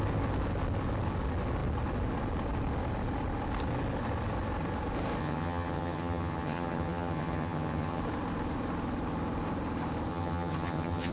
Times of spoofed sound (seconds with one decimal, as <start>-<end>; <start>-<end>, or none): 5.2-8.0; 10.1-11.1